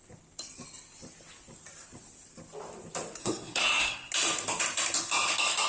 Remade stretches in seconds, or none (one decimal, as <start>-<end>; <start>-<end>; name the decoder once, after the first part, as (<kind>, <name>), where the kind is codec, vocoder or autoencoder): 3.2-4.1 (codec, SNAC)